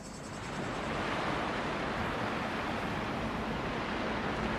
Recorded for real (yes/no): yes